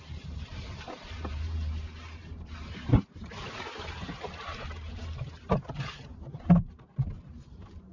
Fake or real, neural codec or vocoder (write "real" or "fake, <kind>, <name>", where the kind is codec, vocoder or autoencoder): fake, vocoder, BigVGAN v2